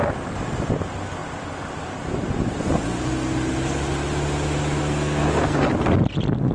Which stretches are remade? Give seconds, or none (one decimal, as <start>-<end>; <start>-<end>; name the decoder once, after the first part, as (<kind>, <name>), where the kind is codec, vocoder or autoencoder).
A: 4.8-5.7 (codec, SNAC)